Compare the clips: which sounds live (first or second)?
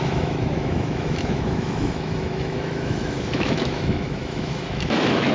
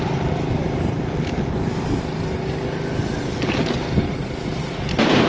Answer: second